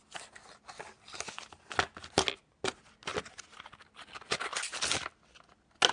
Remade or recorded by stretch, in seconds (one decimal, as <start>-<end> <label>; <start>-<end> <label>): 0.0-5.9 recorded